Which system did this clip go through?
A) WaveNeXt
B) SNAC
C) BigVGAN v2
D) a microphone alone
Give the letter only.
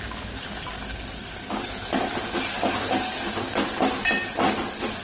D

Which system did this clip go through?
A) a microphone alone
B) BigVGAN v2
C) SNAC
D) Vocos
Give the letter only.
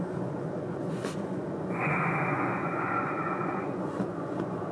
D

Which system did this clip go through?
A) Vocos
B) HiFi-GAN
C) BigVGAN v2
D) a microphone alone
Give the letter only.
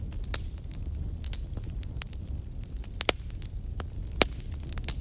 D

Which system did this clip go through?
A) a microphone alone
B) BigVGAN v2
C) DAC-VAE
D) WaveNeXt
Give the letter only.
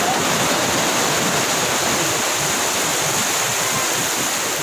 A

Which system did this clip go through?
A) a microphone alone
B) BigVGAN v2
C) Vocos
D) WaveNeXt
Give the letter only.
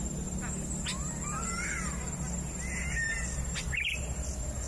A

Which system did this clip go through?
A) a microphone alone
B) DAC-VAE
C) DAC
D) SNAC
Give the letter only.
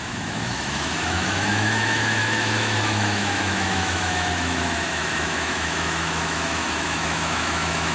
B